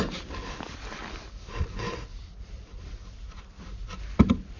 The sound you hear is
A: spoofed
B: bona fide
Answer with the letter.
B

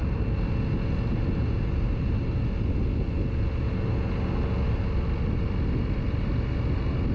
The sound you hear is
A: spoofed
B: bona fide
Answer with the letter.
B